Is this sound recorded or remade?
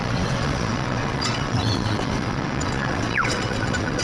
remade